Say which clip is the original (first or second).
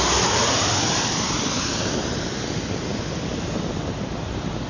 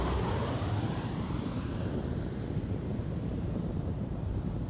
first